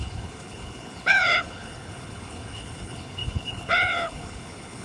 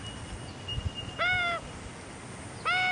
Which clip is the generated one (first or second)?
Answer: first